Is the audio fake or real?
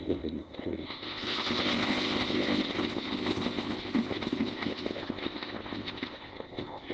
fake